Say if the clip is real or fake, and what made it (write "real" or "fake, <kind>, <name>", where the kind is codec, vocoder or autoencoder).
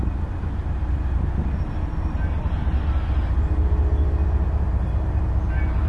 real